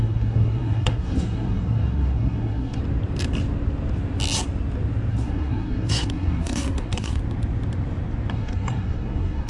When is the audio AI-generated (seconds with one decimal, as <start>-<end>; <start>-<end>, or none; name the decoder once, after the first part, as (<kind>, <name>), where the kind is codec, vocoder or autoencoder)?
0.0-2.8 (codec, SNAC); 5.1-7.2; 8.3-9.5